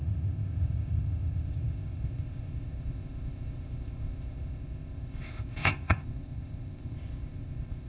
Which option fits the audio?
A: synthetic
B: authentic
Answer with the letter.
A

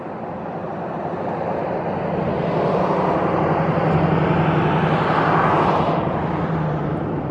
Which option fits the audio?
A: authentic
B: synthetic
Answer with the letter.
A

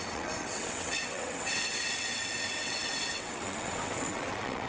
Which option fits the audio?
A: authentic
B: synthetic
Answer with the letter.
B